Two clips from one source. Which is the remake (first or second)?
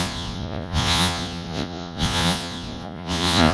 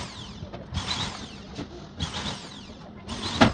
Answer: first